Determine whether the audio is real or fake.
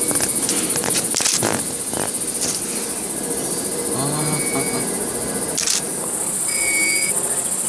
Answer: real